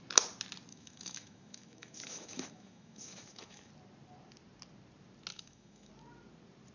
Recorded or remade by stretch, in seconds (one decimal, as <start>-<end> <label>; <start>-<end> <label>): 0.0-0.7 recorded; 0.7-3.7 remade; 3.7-5.3 recorded; 5.3-5.9 remade; 5.9-6.7 recorded